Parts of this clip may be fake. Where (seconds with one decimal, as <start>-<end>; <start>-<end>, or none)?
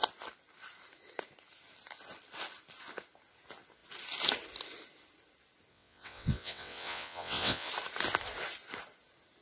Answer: 5.7-7.7